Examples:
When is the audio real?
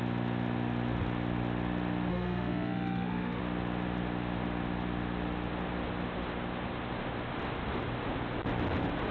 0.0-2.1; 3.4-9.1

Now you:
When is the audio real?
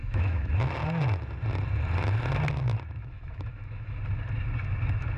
0.5-3.0; 4.0-5.2